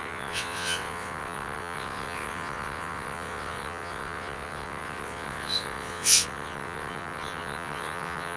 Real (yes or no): no